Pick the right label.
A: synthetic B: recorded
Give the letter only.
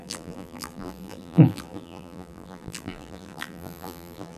A